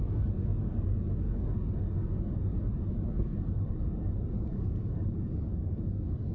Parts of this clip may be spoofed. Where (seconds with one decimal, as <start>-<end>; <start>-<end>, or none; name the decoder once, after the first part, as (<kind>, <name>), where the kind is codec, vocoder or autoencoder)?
3.3-5.8 (vocoder, BigVGAN v2)